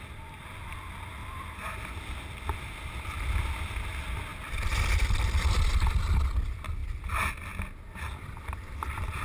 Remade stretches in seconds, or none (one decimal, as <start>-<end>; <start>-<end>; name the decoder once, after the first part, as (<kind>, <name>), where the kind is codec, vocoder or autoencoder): none